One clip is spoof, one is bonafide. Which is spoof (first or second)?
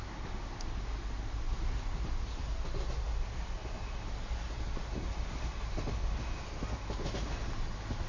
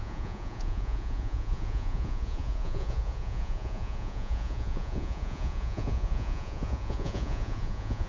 second